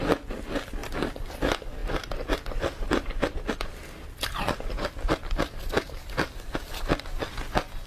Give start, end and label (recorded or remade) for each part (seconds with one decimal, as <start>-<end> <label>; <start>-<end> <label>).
0.0-7.9 recorded